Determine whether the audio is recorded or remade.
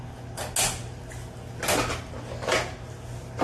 recorded